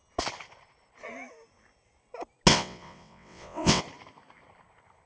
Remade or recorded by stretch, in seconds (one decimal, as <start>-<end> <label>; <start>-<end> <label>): 0.0-2.5 recorded; 2.5-3.8 remade; 3.8-5.1 recorded